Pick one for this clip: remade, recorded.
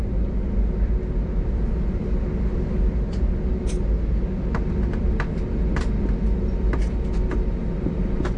recorded